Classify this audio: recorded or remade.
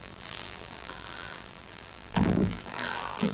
remade